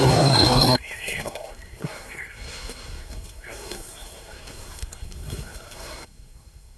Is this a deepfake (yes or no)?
yes